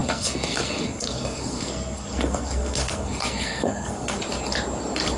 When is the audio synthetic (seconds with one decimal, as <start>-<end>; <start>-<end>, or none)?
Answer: 0.0-4.2